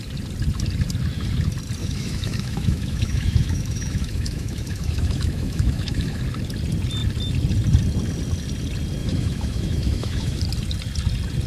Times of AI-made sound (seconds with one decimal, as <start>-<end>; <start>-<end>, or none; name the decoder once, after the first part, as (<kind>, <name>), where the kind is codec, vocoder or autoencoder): 1.8-6.2 (autoencoder, DAC-VAE); 9.0-10.4

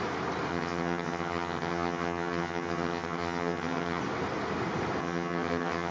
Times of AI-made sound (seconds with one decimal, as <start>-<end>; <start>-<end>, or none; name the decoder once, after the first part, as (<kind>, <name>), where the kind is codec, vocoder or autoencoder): 0.5-4.0 (vocoder, HiFi-GAN); 5.0-5.9

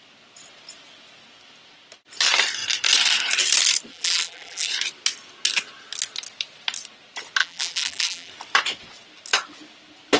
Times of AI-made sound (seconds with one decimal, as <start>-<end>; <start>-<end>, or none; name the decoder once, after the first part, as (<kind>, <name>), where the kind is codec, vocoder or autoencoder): 3.9-4.7 (vocoder, BigVGAN v2); 7.4-8.3

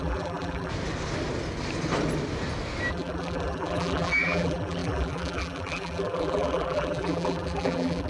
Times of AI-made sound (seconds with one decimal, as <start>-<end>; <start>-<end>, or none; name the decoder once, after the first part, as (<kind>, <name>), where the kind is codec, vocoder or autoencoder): 0.0-0.7 (vocoder, BigVGAN v2); 2.9-8.1

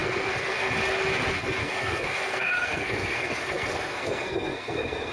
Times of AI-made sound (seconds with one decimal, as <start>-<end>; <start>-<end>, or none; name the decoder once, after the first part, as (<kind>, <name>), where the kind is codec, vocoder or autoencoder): 0.0-0.7 (codec, SNAC); 1.6-5.1

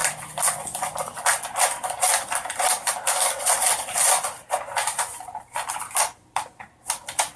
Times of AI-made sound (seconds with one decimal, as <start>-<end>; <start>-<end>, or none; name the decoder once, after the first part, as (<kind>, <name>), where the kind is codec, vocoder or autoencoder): 2.1-2.8 (vocoder, BigVGAN v2); 5.7-7.4